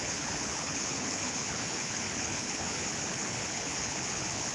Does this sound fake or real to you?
fake